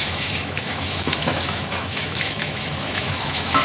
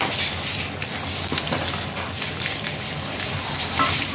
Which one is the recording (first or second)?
second